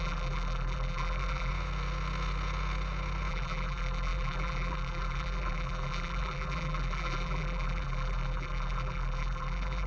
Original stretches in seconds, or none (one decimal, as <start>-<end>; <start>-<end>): 1.5-3.3